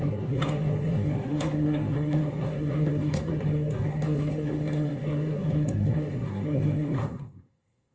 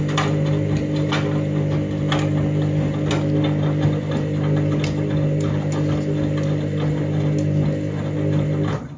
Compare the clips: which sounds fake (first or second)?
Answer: first